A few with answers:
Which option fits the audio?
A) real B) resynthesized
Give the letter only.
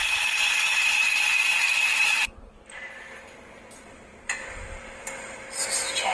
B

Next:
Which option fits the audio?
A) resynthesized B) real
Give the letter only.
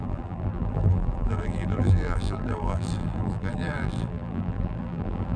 A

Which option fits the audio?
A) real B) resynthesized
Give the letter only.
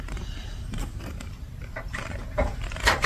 B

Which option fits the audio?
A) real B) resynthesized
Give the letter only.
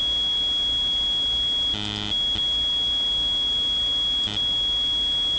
A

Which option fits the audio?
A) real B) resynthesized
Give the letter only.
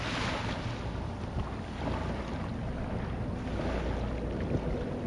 A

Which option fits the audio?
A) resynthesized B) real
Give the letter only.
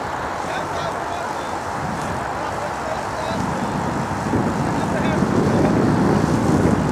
B